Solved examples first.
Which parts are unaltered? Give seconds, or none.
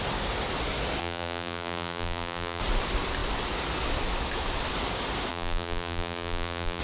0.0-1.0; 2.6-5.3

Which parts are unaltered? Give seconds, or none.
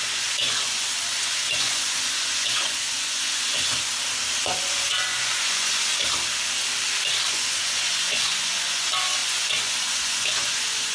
3.9-4.4; 5.9-7.3